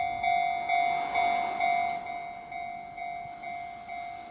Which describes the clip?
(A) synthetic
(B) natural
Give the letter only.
B